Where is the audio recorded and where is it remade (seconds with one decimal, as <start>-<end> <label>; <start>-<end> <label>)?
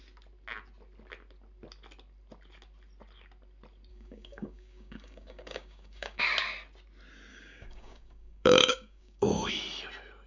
0.0-3.9 recorded; 3.9-6.2 remade; 6.2-7.3 recorded; 7.3-9.5 remade; 9.5-10.3 recorded